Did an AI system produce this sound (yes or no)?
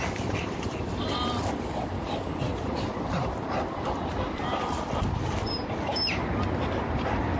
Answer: yes